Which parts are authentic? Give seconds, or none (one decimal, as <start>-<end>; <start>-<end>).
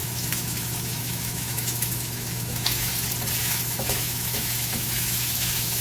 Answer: 2.9-3.4